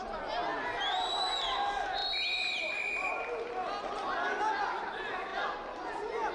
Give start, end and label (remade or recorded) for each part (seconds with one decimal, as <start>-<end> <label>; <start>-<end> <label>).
0.0-6.3 recorded